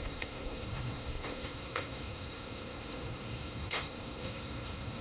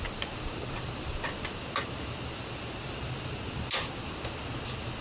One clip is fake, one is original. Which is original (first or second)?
second